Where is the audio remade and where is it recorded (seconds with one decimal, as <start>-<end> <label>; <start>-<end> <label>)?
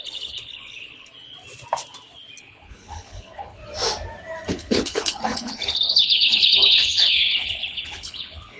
0.0-1.1 remade; 1.1-2.4 recorded; 2.4-3.6 remade; 3.6-4.5 recorded; 4.5-8.6 remade